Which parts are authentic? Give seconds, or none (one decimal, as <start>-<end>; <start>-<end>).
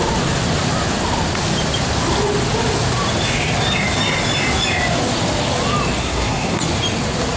0.0-6.0; 6.6-7.4